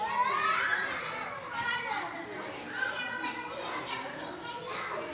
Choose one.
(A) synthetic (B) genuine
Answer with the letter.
B